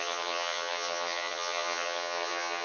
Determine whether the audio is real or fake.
fake